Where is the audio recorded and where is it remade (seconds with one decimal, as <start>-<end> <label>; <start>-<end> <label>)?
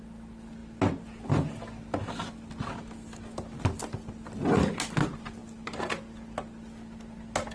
0.0-7.5 recorded